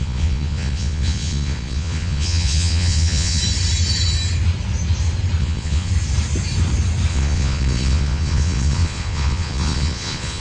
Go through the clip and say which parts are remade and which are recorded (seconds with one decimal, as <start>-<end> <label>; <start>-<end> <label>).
0.0-3.4 remade; 3.4-5.4 recorded; 5.4-5.9 remade; 5.9-7.1 recorded; 7.1-10.4 remade